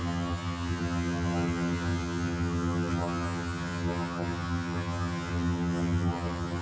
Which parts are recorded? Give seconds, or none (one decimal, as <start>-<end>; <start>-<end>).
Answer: none